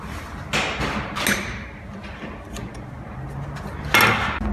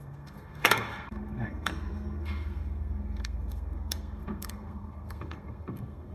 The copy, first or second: second